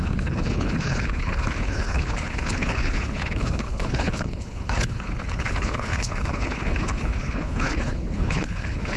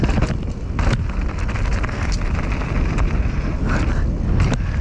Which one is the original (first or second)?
second